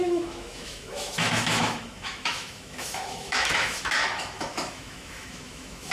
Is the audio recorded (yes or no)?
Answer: no